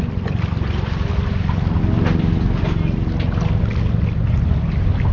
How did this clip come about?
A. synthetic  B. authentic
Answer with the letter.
B